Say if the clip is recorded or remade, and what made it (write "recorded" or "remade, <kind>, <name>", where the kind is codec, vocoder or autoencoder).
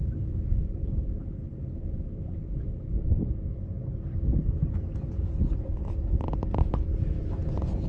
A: remade, vocoder, BigVGAN v2